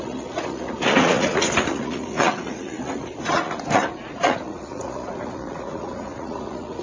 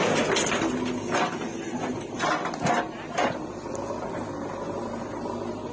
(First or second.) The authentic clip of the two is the second